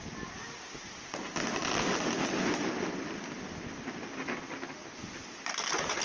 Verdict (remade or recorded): recorded